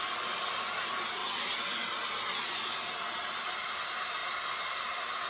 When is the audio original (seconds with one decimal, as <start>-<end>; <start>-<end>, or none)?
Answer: 0.0-4.2; 4.7-5.3